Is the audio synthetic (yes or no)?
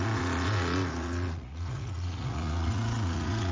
yes